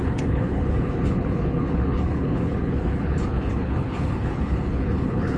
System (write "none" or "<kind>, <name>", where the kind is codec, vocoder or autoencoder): codec, HILCodec